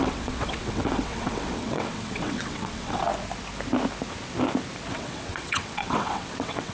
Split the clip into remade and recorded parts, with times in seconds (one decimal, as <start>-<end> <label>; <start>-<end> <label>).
0.0-3.1 remade; 3.1-4.9 recorded; 4.9-6.7 remade